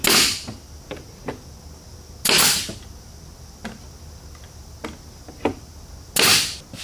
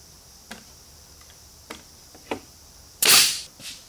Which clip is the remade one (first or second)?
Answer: second